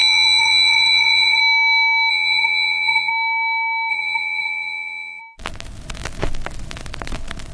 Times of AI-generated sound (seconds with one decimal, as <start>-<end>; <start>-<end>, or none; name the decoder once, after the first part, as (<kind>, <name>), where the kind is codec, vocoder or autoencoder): 0.0-1.4 (vocoder, Vocos); 2.1-3.1; 3.9-5.2